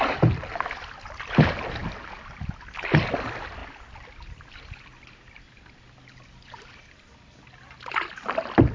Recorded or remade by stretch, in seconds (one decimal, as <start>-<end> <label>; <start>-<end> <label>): 0.0-8.7 recorded